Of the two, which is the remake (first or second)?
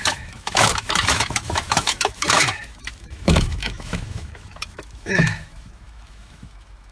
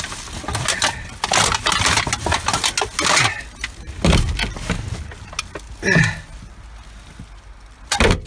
first